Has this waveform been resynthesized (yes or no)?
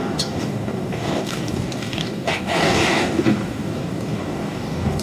yes